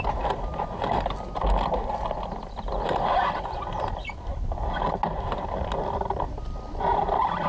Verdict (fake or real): real